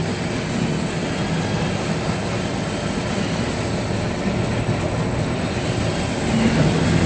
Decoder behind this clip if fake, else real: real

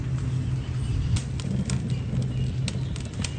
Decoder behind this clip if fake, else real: real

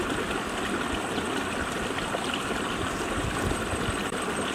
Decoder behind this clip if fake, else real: real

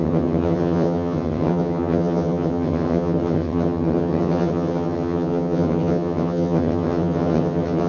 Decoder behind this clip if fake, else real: fake, vocoder, HiFi-GAN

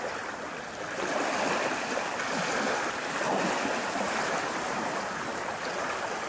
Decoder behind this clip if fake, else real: real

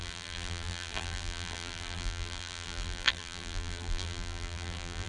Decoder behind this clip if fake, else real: fake, vocoder, BigVGAN v2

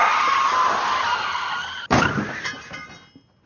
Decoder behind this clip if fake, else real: real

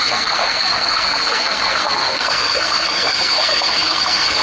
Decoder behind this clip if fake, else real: fake, codec, SNAC